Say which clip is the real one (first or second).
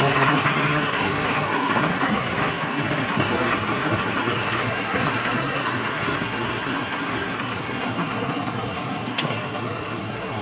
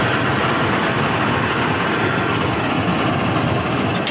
second